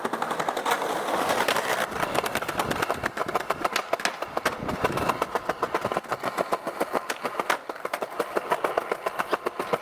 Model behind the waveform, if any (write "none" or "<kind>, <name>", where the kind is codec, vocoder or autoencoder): none